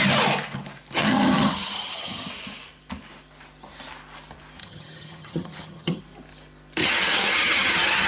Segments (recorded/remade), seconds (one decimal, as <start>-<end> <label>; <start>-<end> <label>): 0.0-1.0 recorded; 1.0-2.3 remade; 2.3-4.6 recorded; 4.6-6.0 remade; 6.0-6.8 recorded; 6.8-8.1 remade